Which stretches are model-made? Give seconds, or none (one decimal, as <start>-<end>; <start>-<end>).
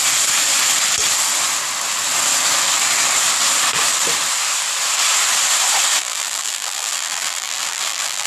6.0-8.3